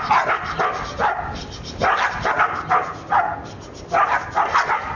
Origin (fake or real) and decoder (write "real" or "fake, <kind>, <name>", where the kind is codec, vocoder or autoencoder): real